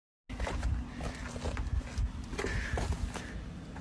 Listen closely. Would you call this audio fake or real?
real